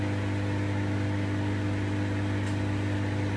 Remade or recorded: recorded